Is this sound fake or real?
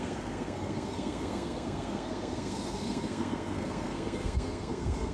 fake